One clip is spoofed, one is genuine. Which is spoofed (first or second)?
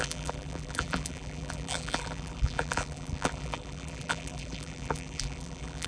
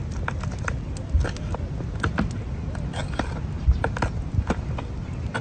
first